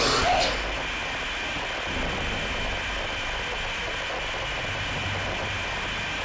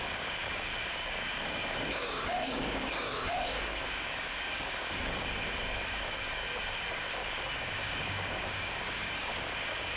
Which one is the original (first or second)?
first